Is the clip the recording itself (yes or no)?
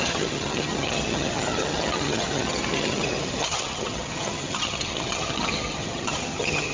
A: no